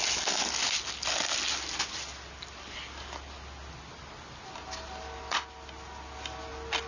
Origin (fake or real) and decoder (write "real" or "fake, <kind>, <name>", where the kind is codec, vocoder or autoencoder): real